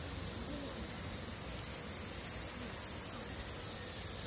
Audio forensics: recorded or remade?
recorded